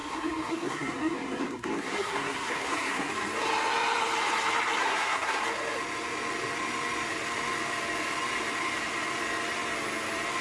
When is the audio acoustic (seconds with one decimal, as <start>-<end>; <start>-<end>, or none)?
3.1-4.8; 5.4-10.4